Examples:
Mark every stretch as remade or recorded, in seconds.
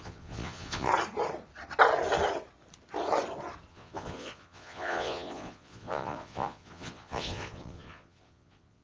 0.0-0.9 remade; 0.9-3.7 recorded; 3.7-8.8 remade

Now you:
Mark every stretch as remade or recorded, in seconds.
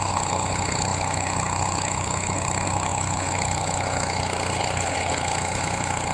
0.0-6.1 remade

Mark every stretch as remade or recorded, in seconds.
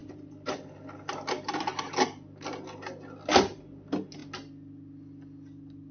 0.0-5.9 recorded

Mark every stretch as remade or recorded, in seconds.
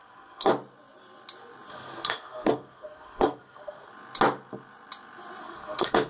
0.0-0.5 remade; 0.5-1.7 recorded; 1.7-3.9 remade; 3.9-5.4 recorded; 5.4-6.1 remade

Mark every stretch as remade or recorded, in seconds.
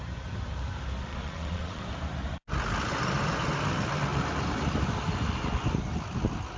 0.0-1.1 recorded; 1.1-1.8 remade; 1.8-6.6 recorded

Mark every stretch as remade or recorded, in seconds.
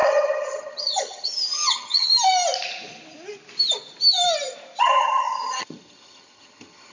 0.0-2.1 remade; 2.1-4.8 recorded; 4.8-6.9 remade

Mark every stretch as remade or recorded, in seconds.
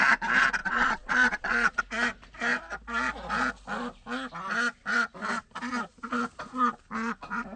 0.0-0.6 recorded; 0.6-1.8 remade; 1.8-7.6 recorded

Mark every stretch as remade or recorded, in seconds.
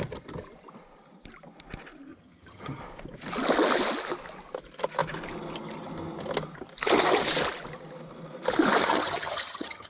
0.0-2.1 recorded; 2.1-2.8 remade; 2.8-8.8 recorded; 8.8-9.9 remade